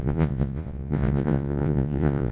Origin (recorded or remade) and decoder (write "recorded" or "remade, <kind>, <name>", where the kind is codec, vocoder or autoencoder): remade, vocoder, Vocos